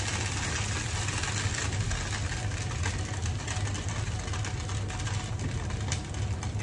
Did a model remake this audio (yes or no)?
no